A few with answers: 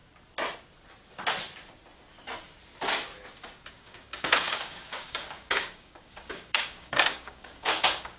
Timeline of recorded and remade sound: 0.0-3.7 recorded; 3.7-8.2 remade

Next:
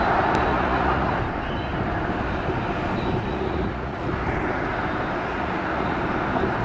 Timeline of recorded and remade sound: 0.0-0.5 recorded; 0.5-1.2 remade; 1.2-3.3 recorded; 3.3-4.1 remade; 4.1-5.3 recorded; 5.3-6.0 remade; 6.0-6.6 recorded

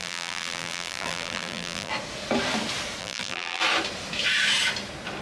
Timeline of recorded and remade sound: 0.0-1.9 remade; 1.9-3.0 recorded; 3.0-3.6 remade; 3.6-5.2 recorded

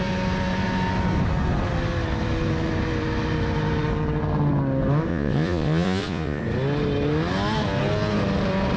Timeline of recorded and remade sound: 0.0-5.1 recorded; 5.1-6.4 remade; 6.4-8.8 recorded

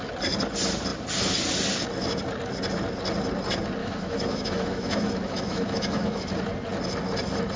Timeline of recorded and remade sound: 0.0-3.8 recorded; 3.8-6.3 remade; 6.3-7.6 recorded

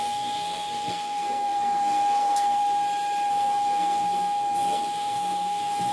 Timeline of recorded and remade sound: 0.0-2.6 remade; 2.6-3.3 recorded; 3.3-5.9 remade

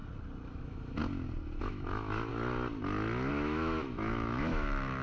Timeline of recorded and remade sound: 0.0-0.5 recorded; 0.5-1.0 remade; 1.0-1.6 recorded; 1.6-2.3 remade; 2.3-3.3 recorded; 3.3-5.0 remade